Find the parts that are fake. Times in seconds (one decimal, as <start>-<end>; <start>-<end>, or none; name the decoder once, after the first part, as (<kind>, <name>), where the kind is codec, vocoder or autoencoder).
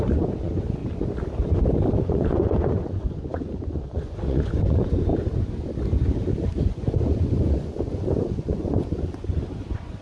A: 0.0-0.8 (vocoder, Vocos); 1.9-5.1; 6.6-10.0